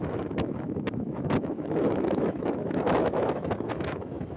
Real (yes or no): no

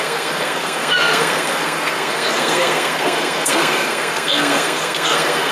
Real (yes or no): no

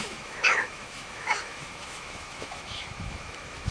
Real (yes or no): no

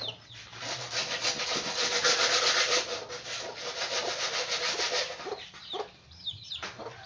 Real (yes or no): yes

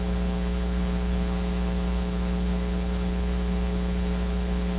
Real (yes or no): no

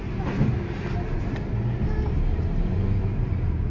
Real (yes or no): yes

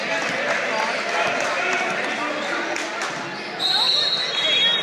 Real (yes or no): yes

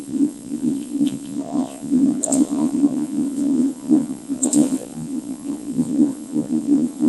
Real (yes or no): no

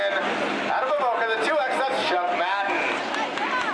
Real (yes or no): yes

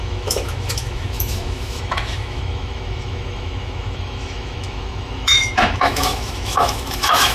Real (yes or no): no